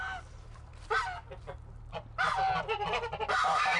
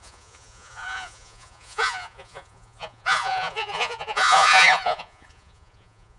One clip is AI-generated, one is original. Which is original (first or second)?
first